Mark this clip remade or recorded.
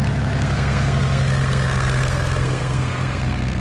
remade